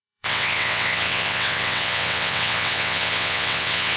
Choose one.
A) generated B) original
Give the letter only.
A